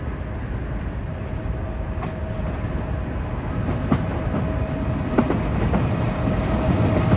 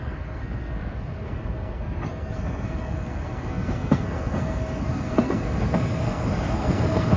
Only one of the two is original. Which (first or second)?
first